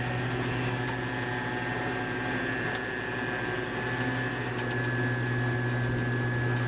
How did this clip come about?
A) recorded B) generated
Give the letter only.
A